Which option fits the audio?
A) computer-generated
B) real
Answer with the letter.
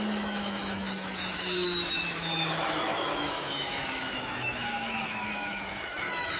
A